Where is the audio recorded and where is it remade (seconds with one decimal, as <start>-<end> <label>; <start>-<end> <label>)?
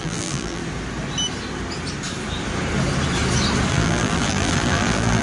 0.0-0.6 remade; 0.6-3.7 recorded; 3.7-5.2 remade